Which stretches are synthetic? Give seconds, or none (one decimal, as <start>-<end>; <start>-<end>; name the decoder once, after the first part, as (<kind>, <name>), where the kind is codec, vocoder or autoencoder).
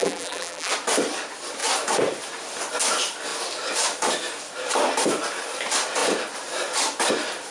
0.0-0.7 (vocoder, BigVGAN v2)